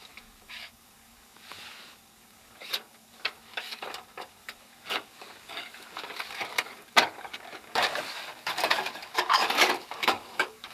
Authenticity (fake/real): fake